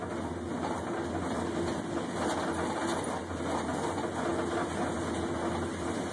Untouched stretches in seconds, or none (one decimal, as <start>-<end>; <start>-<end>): 0.0-6.1